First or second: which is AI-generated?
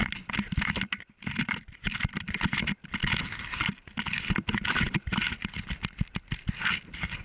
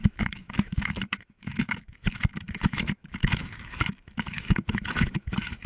second